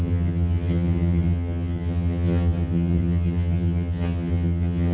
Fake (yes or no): yes